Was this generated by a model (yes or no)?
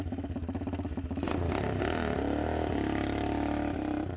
yes